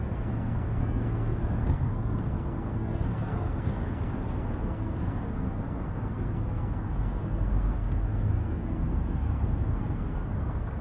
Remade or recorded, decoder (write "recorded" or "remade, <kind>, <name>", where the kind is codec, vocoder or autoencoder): remade, codec, SNAC